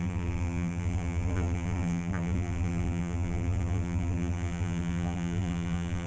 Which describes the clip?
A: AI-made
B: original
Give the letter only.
A